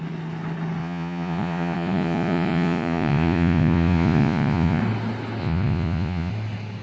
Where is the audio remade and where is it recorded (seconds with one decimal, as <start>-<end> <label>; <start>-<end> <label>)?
0.0-0.8 recorded; 0.8-4.8 remade; 4.8-5.4 recorded; 5.4-6.3 remade; 6.3-6.8 recorded